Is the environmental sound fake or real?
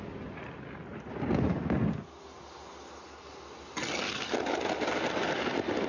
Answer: real